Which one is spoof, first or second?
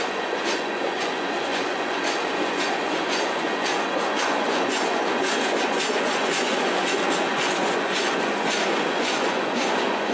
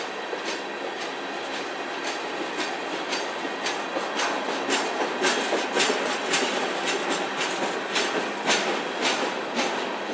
first